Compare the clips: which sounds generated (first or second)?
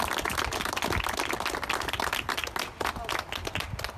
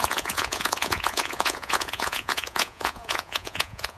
second